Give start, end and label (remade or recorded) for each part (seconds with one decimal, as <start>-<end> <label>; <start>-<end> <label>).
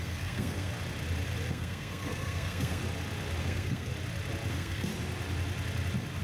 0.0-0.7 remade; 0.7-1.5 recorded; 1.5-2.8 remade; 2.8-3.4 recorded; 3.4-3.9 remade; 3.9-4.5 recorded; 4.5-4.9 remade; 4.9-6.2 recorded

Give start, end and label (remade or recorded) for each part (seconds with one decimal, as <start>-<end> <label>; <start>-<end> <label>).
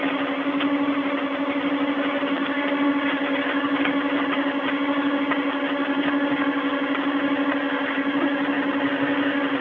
0.0-9.6 recorded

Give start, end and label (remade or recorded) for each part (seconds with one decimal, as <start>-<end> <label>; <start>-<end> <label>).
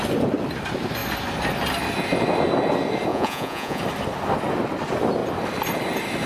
0.0-3.1 recorded; 3.1-3.8 remade; 3.8-6.3 recorded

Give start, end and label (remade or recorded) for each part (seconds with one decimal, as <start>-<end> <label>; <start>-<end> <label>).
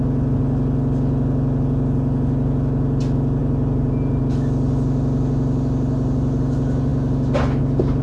0.0-3.4 recorded; 3.4-4.2 remade; 4.2-8.0 recorded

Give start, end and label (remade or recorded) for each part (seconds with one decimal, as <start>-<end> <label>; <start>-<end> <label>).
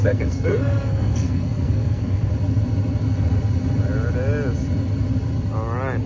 0.0-2.3 remade; 2.3-6.1 recorded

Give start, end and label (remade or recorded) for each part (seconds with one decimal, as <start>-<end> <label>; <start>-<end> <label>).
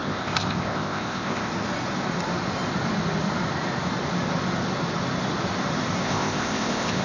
0.0-1.5 remade; 1.5-6.0 recorded; 6.0-7.0 remade